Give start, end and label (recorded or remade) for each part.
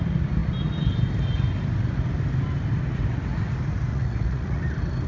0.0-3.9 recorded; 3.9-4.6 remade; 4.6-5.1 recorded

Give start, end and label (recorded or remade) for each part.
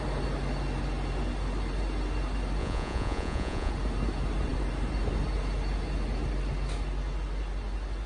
0.0-2.6 recorded; 2.6-3.7 remade; 3.7-8.1 recorded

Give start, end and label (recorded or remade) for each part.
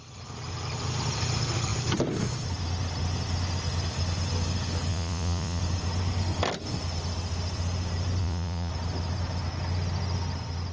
0.0-4.9 recorded; 4.9-5.6 remade; 5.6-8.2 recorded; 8.2-8.7 remade; 8.7-10.7 recorded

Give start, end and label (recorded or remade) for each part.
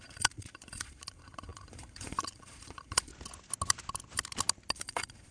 0.0-3.1 remade; 3.1-4.7 recorded; 4.7-5.3 remade